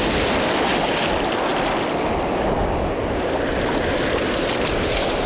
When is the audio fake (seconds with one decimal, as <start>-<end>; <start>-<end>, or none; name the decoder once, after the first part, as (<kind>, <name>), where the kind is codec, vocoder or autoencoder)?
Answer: none